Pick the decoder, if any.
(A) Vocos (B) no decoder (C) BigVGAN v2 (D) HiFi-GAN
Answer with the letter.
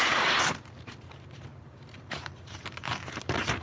C